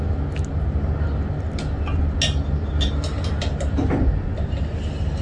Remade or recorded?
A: recorded